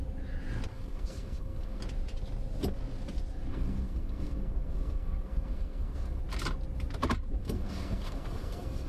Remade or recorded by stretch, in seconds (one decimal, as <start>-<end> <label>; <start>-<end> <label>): 0.0-0.7 recorded; 0.7-1.8 remade; 1.8-3.5 recorded; 3.5-6.2 remade; 6.2-7.4 recorded; 7.4-8.9 remade